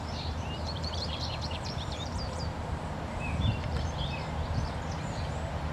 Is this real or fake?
fake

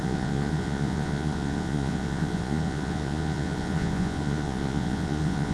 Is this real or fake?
fake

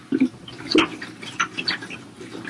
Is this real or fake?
real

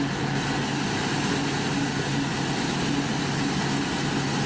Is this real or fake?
real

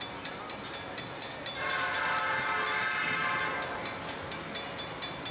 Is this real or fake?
real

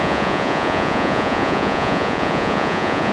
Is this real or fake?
fake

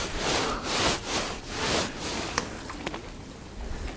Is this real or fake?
real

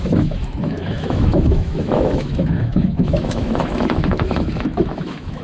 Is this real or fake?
fake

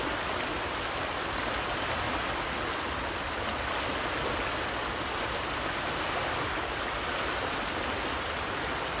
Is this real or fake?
real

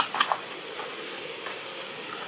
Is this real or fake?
real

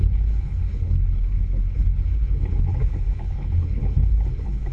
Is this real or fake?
fake